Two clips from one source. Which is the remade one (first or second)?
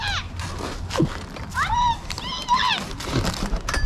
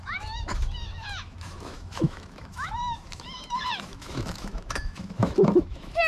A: second